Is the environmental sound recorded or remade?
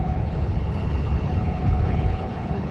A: remade